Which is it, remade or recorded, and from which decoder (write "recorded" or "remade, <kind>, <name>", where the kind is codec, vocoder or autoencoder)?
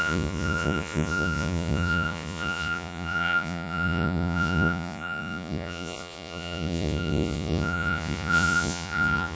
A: remade, vocoder, Vocos